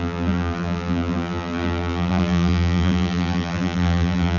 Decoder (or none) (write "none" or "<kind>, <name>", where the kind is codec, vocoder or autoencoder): vocoder, BigVGAN v2